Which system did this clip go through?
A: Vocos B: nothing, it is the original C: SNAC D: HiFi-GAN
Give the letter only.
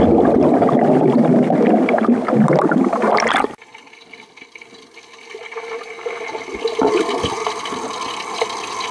B